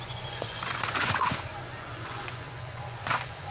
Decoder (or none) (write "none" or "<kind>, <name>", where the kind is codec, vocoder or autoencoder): vocoder, Vocos